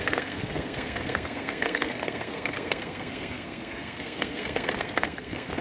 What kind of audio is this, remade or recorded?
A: remade